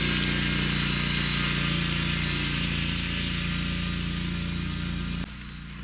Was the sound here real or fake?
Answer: real